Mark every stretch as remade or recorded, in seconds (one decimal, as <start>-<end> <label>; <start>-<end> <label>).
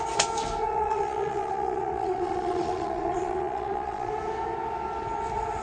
0.0-0.7 recorded; 0.7-4.1 remade; 4.1-5.6 recorded